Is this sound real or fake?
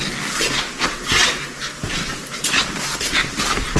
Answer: real